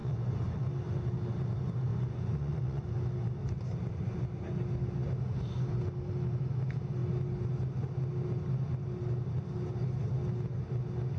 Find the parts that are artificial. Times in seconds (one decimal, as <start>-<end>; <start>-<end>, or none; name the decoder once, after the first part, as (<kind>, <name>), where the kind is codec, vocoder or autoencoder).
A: 0.0-0.7 (vocoder, Vocos); 1.9-2.8